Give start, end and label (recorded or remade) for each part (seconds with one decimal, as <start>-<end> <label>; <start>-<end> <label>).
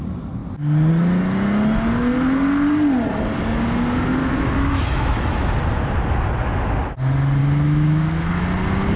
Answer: 0.0-4.2 recorded; 4.2-5.5 remade; 5.5-7.4 recorded; 7.4-8.3 remade; 8.3-9.0 recorded